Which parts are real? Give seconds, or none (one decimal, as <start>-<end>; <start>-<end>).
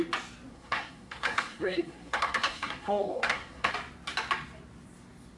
0.0-0.5; 3.7-5.4